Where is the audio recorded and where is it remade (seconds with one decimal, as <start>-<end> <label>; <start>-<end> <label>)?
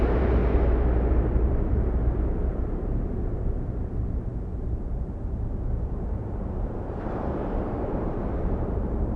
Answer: 0.0-0.4 remade; 0.4-1.1 recorded; 1.1-9.2 remade